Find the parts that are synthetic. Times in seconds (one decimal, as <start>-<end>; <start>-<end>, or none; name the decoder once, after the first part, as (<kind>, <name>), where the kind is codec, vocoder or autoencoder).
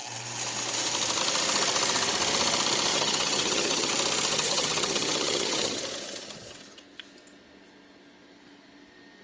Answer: 2.9-3.9 (vocoder, HiFi-GAN); 4.3-5.8